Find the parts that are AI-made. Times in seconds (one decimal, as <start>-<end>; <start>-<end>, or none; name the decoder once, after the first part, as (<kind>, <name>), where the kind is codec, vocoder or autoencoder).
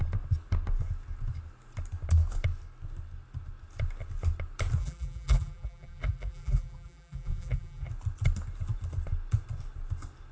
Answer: 4.8-7.9 (vocoder, BigVGAN v2)